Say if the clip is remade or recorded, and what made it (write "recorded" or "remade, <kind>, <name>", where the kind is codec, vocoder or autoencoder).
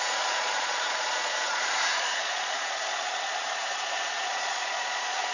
remade, vocoder, Vocos